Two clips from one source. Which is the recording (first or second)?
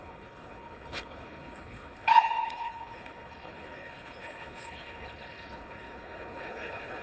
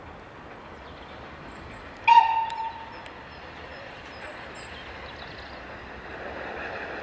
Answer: second